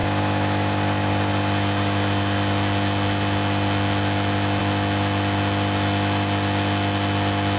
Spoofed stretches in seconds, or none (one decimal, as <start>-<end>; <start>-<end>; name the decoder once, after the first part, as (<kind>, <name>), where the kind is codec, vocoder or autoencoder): none